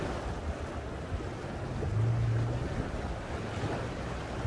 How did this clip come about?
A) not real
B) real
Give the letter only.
B